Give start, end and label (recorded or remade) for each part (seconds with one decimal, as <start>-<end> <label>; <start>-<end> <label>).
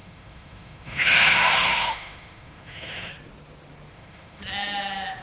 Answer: 0.0-3.1 remade; 3.1-3.9 recorded; 3.9-4.4 remade; 4.4-5.2 recorded